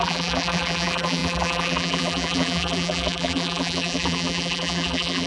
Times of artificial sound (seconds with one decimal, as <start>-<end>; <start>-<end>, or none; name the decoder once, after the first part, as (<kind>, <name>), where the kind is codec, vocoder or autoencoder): 0.0-5.3 (vocoder, BigVGAN v2)